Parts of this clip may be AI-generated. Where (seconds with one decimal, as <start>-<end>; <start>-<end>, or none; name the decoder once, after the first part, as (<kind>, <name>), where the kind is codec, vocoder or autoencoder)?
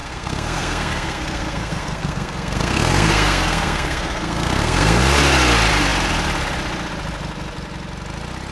0.0-5.0 (codec, SNAC)